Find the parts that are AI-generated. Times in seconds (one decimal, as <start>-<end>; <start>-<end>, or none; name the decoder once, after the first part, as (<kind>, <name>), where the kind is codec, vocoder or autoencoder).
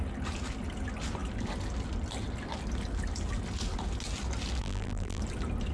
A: 4.6-5.2 (vocoder, BigVGAN v2)